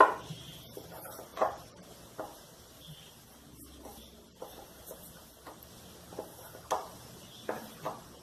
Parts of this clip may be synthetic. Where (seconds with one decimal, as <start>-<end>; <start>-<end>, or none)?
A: none